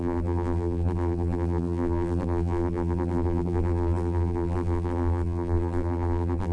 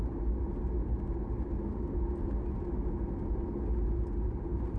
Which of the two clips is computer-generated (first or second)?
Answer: first